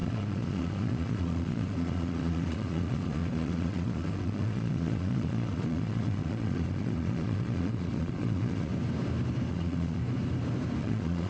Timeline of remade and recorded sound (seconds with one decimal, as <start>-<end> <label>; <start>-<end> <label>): 0.0-8.7 remade; 8.7-9.5 recorded; 9.5-10.0 remade; 10.0-10.8 recorded; 10.8-11.3 remade